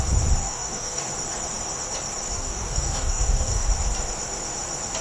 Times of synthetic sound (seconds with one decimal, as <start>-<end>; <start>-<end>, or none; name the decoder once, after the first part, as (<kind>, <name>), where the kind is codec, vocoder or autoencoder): 0.4-1.1 (codec, DAC); 2.3-3.7